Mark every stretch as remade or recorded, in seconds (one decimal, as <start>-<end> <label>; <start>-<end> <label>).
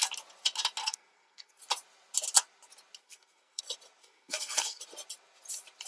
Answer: 0.0-0.8 recorded; 0.8-1.6 remade; 1.6-3.0 recorded; 3.0-3.6 remade; 3.6-4.0 recorded; 4.0-4.8 remade; 4.8-5.9 recorded